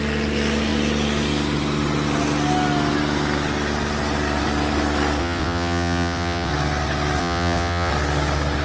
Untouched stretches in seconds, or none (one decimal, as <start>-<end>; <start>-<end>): 0.0-5.2; 6.5-7.2; 7.9-8.6